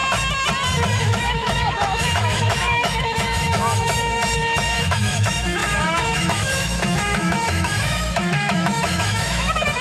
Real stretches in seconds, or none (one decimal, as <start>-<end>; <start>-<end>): 0.0-1.0